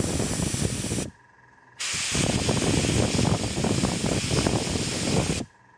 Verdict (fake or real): real